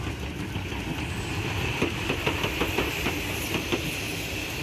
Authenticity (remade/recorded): recorded